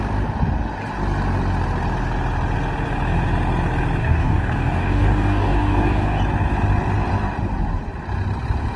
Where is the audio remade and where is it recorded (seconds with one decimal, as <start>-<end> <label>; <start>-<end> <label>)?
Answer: 0.0-4.0 recorded; 4.0-6.2 remade; 6.2-8.8 recorded